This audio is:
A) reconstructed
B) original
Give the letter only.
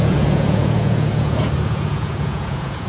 A